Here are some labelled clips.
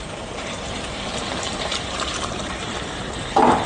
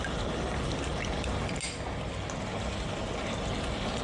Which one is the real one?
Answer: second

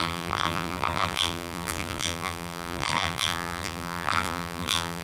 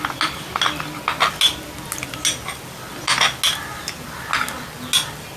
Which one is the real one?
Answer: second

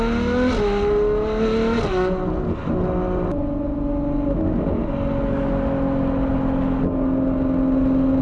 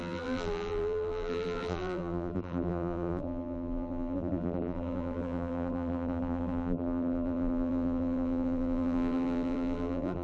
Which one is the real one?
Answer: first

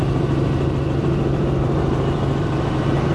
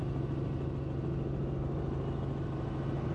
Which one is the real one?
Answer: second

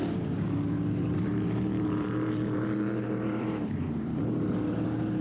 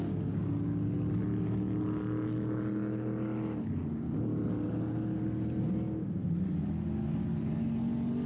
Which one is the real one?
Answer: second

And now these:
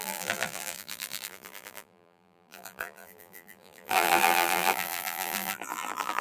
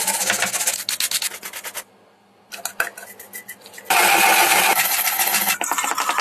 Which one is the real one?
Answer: second